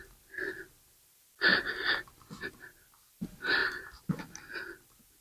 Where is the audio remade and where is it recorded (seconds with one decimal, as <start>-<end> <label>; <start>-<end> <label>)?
0.0-5.2 recorded